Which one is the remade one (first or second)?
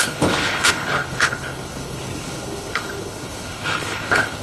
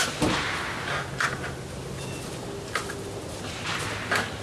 first